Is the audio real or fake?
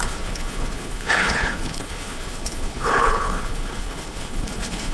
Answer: fake